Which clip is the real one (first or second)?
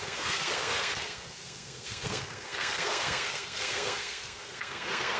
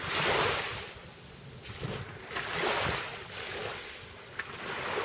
second